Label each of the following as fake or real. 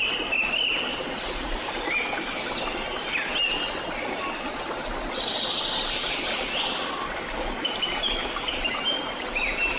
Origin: real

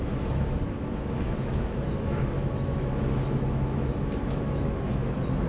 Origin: fake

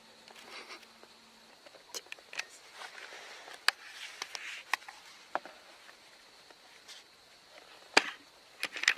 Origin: real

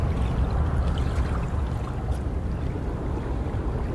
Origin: real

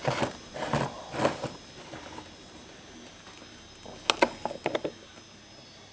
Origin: real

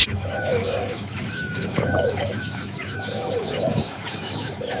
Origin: fake